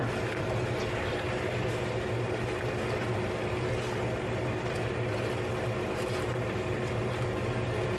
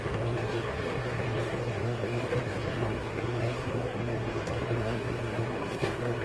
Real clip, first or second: first